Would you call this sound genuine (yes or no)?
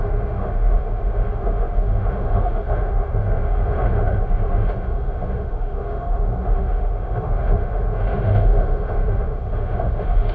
no